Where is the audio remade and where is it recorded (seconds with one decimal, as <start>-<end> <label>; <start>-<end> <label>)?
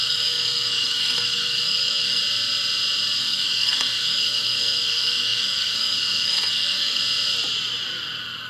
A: 0.0-2.2 remade; 2.2-3.2 recorded; 3.2-7.0 remade; 7.0-8.5 recorded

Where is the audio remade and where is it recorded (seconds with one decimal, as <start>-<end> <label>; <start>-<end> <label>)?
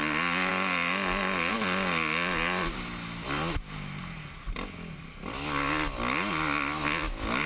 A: 0.0-7.5 recorded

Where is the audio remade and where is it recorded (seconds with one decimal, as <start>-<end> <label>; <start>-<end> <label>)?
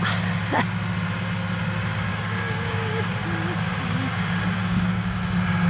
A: 0.0-2.1 recorded; 2.1-3.1 remade; 3.1-4.6 recorded; 4.6-5.2 remade; 5.2-5.7 recorded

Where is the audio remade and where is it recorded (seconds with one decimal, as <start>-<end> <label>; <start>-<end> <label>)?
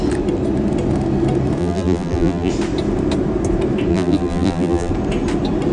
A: 0.0-1.6 recorded; 1.6-2.5 remade; 2.5-3.9 recorded; 3.9-4.9 remade; 4.9-5.7 recorded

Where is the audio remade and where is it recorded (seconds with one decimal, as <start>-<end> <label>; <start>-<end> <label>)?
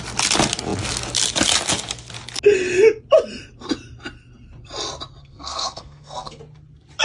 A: 0.0-5.2 recorded; 5.2-6.4 remade; 6.4-7.0 recorded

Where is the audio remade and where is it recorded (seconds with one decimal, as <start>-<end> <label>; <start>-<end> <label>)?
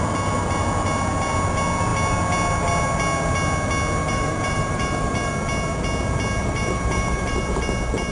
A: 0.0-4.0 recorded; 4.0-5.3 remade; 5.3-6.4 recorded; 6.4-7.4 remade; 7.4-8.1 recorded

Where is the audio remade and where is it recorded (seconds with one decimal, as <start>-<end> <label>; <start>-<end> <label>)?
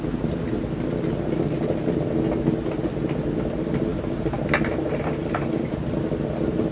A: 0.0-6.7 recorded